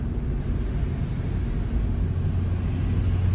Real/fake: real